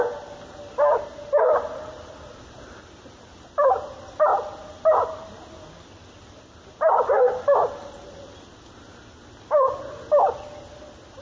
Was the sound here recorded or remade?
recorded